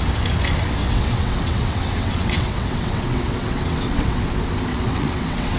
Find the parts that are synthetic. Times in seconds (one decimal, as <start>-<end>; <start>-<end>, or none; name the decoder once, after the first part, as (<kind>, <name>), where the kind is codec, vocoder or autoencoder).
0.8-4.2 (vocoder, WaveNeXt); 4.7-5.6